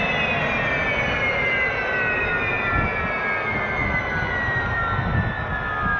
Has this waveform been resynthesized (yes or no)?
no